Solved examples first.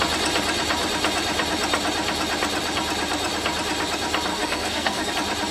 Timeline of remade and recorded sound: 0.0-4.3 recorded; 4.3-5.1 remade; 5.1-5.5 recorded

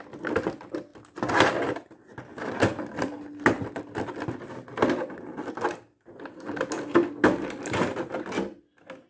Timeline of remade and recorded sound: 0.0-9.1 recorded

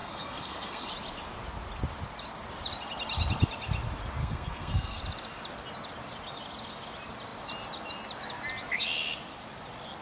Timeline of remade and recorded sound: 0.0-0.9 remade; 0.9-4.2 recorded; 4.2-5.0 remade; 5.0-10.0 recorded

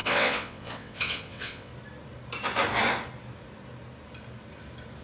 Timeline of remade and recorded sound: 0.0-1.7 remade; 1.7-5.0 recorded

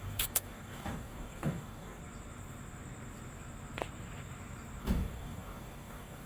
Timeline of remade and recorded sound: 0.0-2.0 remade; 2.0-4.8 recorded; 4.8-6.3 remade

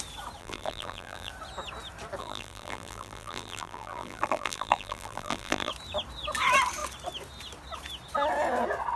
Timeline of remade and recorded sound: 0.0-0.4 recorded; 0.4-1.3 remade; 1.3-2.2 recorded; 2.2-5.7 remade; 5.7-9.0 recorded

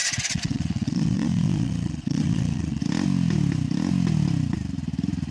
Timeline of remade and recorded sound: 0.0-2.8 remade; 2.8-5.3 recorded

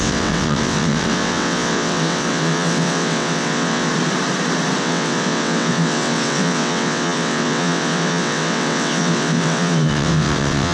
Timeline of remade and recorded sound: 0.0-3.9 remade; 3.9-4.8 recorded; 4.8-10.7 remade